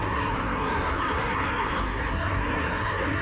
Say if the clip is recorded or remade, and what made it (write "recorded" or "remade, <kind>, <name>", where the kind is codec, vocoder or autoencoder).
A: remade, codec, SNAC